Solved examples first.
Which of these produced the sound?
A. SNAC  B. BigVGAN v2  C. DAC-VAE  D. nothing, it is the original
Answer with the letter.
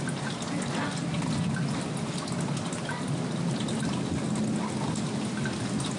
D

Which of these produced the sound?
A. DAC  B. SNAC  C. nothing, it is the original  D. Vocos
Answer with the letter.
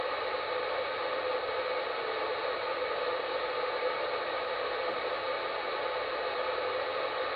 C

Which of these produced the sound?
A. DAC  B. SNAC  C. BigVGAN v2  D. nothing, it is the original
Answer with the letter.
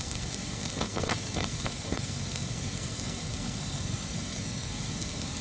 B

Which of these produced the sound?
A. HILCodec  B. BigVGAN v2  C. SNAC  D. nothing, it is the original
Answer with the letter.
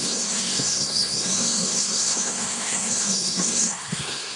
C